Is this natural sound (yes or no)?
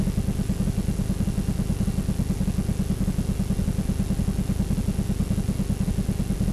yes